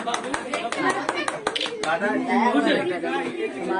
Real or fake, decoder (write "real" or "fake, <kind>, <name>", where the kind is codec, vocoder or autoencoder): real